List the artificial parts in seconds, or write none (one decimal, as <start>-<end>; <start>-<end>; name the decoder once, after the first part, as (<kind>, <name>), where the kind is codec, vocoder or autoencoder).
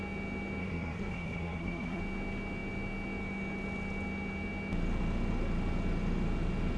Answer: 0.6-2.0 (codec, SNAC)